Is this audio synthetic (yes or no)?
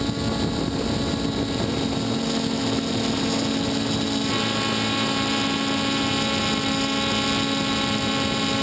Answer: no